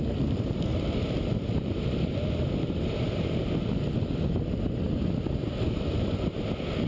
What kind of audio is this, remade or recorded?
recorded